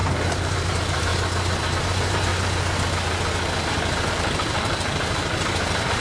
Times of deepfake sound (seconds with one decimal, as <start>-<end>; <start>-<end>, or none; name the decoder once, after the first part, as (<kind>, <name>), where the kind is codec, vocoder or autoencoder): 0.0-1.1 (vocoder, BigVGAN v2); 1.8-2.3; 4.1-6.0